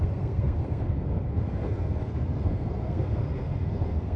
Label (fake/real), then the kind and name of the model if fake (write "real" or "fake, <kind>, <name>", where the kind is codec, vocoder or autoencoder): fake, codec, SNAC